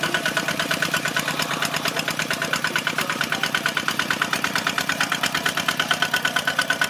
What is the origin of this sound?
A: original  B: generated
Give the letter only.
B